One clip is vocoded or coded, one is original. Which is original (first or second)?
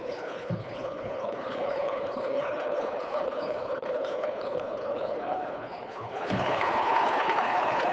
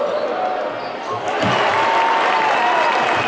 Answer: second